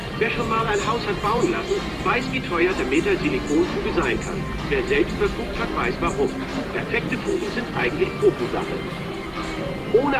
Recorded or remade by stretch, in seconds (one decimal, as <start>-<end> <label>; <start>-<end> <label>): 0.0-2.8 remade; 2.8-6.5 recorded; 6.5-7.9 remade; 7.9-10.2 recorded